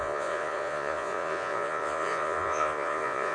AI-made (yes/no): yes